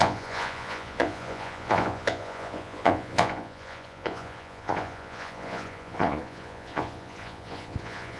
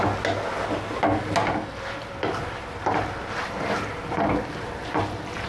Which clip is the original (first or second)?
second